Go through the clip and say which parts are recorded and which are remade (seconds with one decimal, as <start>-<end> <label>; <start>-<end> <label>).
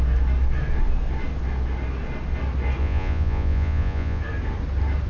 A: 0.0-2.8 recorded; 2.8-4.2 remade; 4.2-5.1 recorded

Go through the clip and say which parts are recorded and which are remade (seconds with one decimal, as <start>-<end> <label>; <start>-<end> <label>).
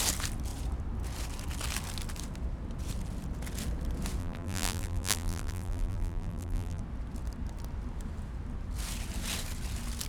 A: 0.0-4.2 recorded; 4.2-6.8 remade; 6.8-10.1 recorded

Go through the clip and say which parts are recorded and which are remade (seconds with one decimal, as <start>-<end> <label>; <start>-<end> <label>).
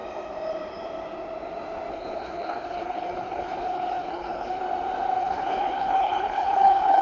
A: 0.0-1.9 recorded; 1.9-4.6 remade; 4.6-5.2 recorded; 5.2-7.0 remade